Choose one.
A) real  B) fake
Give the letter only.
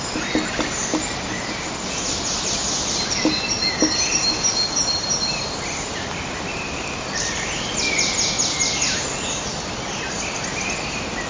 A